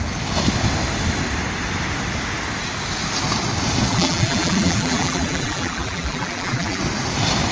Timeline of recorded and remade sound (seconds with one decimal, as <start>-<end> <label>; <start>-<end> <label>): 0.0-3.9 recorded; 3.9-6.8 remade; 6.8-7.5 recorded